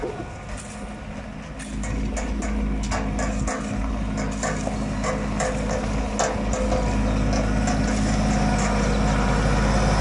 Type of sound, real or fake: real